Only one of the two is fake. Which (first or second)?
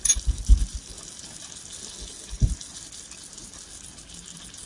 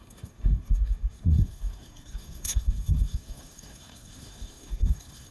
second